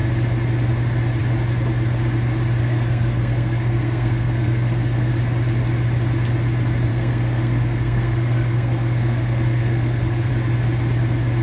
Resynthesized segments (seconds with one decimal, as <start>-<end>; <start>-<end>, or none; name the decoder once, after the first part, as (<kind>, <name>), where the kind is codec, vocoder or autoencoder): 2.6-5.1 (codec, SNAC); 6.9-10.3